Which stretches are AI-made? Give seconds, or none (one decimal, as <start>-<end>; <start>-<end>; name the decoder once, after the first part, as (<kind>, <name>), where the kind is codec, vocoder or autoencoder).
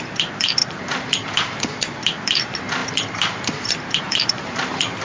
0.0-5.0 (vocoder, BigVGAN v2)